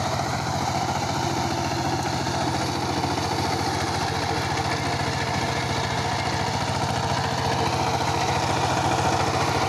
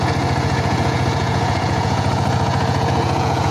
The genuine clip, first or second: first